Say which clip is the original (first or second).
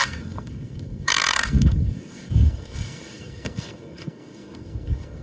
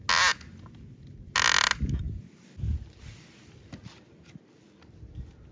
second